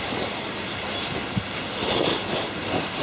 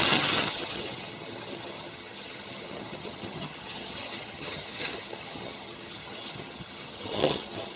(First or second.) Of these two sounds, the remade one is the second